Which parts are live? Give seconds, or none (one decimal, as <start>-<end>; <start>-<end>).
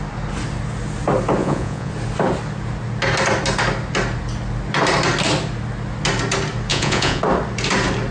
0.0-1.4; 1.9-6.7; 7.2-8.1